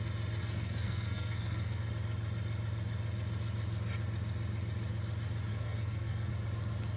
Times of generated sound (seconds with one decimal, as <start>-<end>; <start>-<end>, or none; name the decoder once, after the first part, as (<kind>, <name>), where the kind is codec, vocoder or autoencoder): 0.4-1.9 (codec, SNAC); 5.5-6.3